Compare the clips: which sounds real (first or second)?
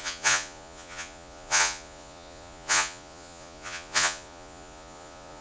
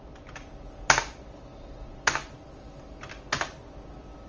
second